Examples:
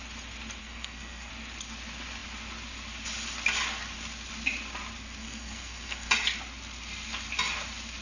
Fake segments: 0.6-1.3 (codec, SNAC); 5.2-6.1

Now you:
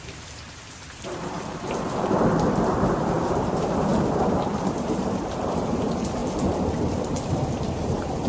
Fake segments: 0.0-6.2 (vocoder, BigVGAN v2); 7.3-8.3

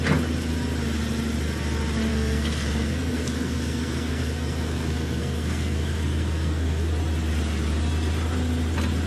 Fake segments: 2.1-6.9 (codec, SNAC)

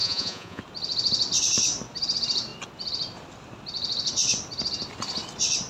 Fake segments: 0.0-0.6 (vocoder, Vocos)

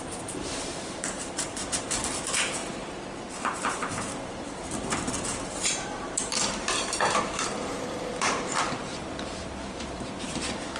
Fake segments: 0.0-2.6 (vocoder, BigVGAN v2); 3.3-10.8

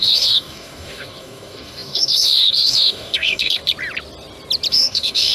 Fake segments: 0.0-3.6 (codec, DAC); 4.7-5.3

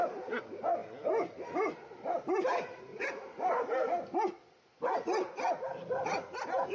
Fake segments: none